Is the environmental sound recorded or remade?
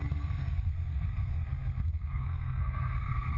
remade